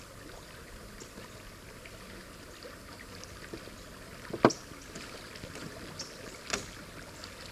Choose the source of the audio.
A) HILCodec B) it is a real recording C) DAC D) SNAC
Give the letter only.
B